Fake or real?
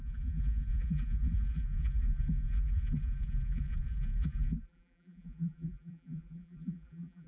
fake